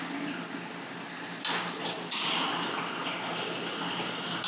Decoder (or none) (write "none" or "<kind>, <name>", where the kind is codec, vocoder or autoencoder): none